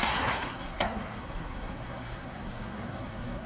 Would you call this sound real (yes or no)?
no